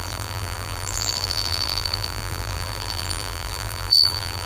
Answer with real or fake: fake